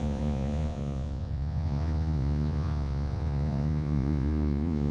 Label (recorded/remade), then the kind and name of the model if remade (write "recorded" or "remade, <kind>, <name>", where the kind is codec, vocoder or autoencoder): remade, vocoder, Vocos